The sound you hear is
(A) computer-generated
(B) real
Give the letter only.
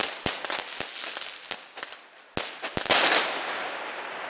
B